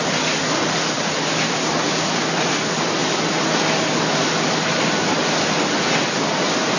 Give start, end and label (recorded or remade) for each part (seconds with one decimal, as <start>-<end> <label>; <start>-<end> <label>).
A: 0.0-6.8 recorded